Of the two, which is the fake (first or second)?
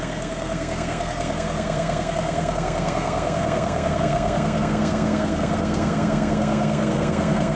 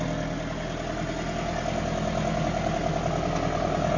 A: first